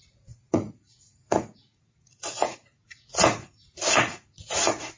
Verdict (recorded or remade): remade